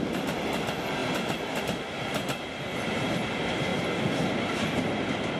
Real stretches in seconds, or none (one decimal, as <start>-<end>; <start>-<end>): 0.0-5.4